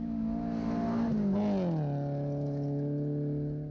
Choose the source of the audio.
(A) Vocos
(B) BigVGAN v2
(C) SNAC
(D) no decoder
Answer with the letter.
D